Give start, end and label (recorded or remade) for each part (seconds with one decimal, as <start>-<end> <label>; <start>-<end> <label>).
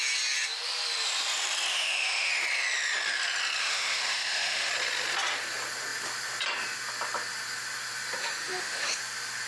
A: 0.0-1.7 recorded; 1.7-2.3 remade; 2.3-3.6 recorded; 3.6-4.7 remade; 4.7-8.2 recorded; 8.2-9.0 remade; 9.0-9.5 recorded